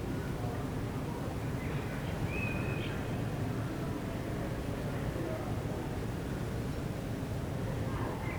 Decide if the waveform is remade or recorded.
recorded